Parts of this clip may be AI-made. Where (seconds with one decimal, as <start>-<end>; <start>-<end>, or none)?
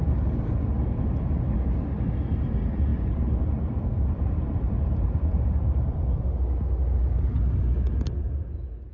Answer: 2.9-6.2